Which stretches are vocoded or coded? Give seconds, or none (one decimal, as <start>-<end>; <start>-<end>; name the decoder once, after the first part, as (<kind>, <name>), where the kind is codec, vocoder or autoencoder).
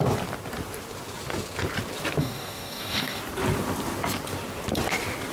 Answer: 2.2-3.2 (codec, DAC)